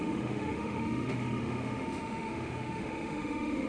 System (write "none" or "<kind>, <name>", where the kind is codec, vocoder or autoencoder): autoencoder, DAC-VAE